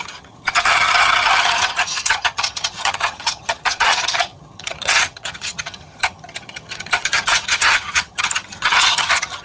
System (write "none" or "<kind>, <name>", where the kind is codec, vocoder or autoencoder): vocoder, HiFi-GAN